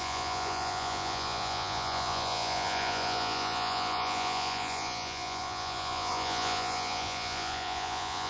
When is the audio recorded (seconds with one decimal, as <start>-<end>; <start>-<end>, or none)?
none